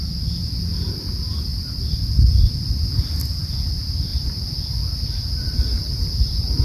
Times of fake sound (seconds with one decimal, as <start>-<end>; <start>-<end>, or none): 1.5-3.1; 4.1-6.6